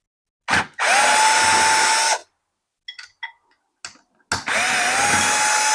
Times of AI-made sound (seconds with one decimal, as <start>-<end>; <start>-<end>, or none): none